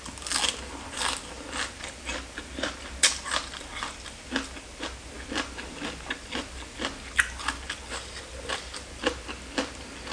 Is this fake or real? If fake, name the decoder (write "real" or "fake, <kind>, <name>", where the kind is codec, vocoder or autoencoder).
real